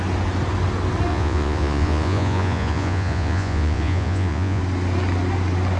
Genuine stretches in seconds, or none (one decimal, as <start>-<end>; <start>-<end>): 0.0-1.1; 4.6-5.8